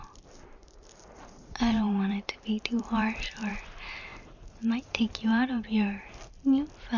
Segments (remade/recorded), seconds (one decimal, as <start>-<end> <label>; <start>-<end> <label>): 0.0-0.6 recorded; 0.6-3.5 remade; 3.5-4.1 recorded; 4.1-6.3 remade; 6.3-7.0 recorded